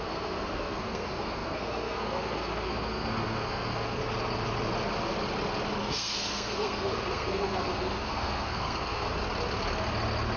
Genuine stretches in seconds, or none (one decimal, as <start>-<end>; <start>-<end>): 4.0-5.8; 9.2-10.4